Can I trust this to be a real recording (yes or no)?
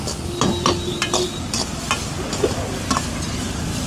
yes